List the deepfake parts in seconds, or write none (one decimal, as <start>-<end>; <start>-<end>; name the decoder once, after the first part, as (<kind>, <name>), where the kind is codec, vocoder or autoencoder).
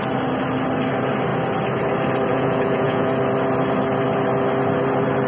2.3-3.1 (vocoder, Vocos)